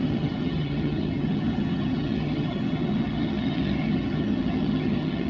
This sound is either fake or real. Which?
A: fake